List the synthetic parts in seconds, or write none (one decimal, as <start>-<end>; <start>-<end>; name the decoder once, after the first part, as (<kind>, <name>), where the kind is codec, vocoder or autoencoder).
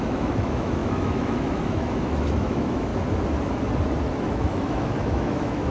0.0-2.9 (autoencoder, DAC-VAE); 4.2-5.7